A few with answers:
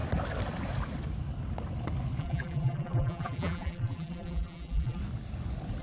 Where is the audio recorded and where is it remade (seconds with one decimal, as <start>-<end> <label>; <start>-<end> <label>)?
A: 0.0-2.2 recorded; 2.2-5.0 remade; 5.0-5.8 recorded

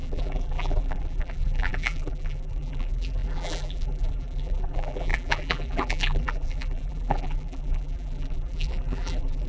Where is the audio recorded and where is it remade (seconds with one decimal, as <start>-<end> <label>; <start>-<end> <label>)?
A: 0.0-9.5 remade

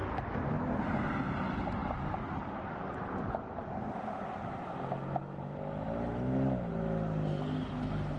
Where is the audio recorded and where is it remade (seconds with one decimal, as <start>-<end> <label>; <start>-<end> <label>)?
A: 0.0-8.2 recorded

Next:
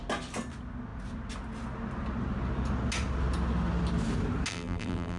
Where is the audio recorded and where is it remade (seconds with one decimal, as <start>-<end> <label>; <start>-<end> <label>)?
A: 0.0-4.5 recorded; 4.5-5.2 remade

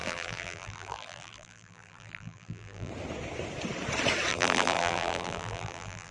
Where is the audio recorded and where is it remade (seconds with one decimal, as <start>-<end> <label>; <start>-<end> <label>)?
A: 0.0-2.9 remade; 2.9-4.3 recorded; 4.3-6.1 remade

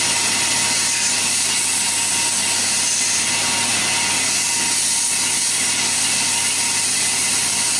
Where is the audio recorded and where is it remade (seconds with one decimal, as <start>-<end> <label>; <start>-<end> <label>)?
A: 0.0-7.8 remade